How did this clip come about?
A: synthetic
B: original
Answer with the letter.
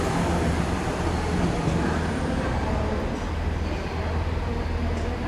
B